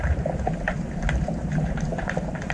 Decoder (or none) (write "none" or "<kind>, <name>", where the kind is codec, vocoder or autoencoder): vocoder, BigVGAN v2